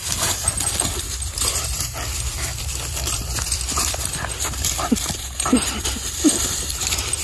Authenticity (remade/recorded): remade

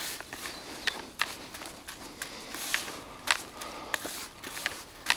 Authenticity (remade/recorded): recorded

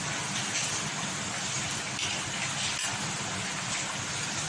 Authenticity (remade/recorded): recorded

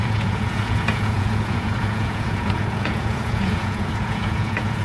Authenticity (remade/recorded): remade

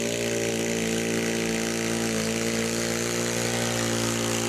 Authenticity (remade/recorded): recorded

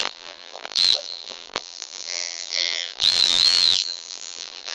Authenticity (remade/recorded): remade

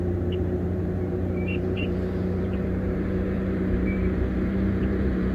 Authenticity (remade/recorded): remade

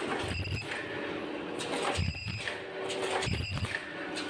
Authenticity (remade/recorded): recorded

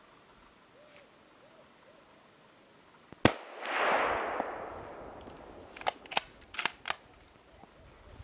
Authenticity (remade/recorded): recorded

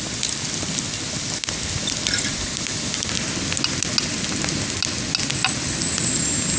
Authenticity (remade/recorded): recorded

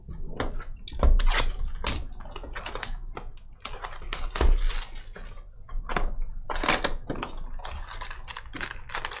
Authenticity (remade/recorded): recorded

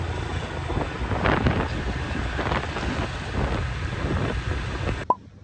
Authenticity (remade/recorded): recorded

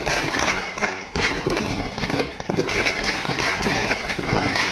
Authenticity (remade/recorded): remade